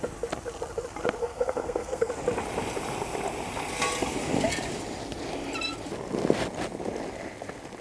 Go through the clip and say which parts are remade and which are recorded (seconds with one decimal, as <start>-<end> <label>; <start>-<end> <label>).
0.0-1.2 recorded; 1.2-2.1 remade; 2.1-7.8 recorded